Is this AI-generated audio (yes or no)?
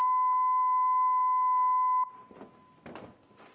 no